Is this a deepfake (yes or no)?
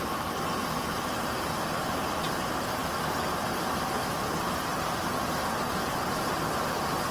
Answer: no